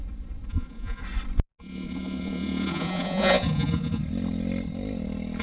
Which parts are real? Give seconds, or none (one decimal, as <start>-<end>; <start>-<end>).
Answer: 0.0-0.5; 1.0-1.6; 4.0-5.4